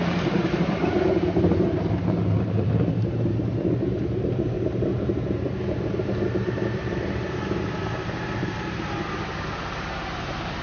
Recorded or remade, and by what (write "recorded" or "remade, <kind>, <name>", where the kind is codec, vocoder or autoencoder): remade, vocoder, BigVGAN v2